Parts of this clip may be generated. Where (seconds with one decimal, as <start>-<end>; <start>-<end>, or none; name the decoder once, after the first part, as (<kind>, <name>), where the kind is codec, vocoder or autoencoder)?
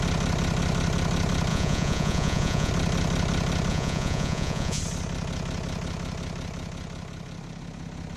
1.5-2.7 (vocoder, Vocos); 3.7-4.8